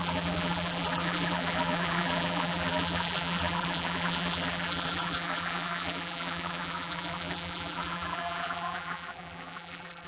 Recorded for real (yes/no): no